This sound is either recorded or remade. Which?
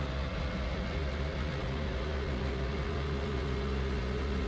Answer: remade